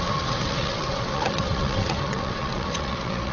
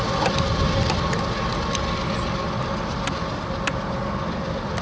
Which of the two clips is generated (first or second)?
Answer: first